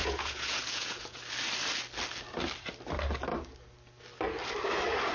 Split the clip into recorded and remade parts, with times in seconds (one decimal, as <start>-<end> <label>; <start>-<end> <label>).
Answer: 0.0-1.2 remade; 1.2-5.1 recorded